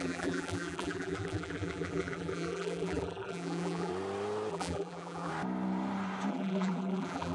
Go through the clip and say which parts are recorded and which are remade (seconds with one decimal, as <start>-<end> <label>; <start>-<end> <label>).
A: 0.0-3.9 remade; 3.9-4.5 recorded; 4.5-5.3 remade; 5.3-6.3 recorded; 6.3-7.3 remade